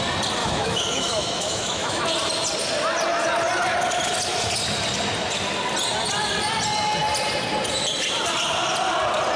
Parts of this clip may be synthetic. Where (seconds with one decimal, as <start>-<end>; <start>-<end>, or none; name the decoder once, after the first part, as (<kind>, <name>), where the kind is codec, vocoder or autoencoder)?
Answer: 0.4-2.0 (autoencoder, DAC-VAE)

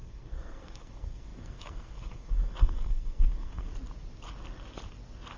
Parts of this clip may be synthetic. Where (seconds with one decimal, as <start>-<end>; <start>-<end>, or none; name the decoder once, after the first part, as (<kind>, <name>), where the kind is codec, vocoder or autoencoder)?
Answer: 0.0-3.7 (codec, SNAC)

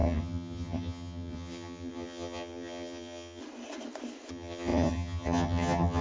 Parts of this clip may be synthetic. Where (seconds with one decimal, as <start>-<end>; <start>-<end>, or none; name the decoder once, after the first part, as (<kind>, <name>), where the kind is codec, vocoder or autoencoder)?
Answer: 0.0-3.4 (vocoder, HiFi-GAN); 4.3-6.0

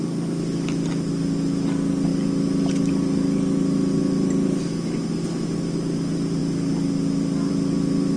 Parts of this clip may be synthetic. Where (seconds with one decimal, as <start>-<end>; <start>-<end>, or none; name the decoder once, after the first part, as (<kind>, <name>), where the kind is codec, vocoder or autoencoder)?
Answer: none

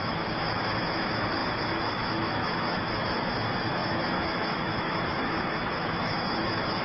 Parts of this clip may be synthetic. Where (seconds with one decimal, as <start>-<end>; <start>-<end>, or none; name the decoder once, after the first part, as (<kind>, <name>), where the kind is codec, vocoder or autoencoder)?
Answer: 0.0-6.8 (autoencoder, DAC-VAE)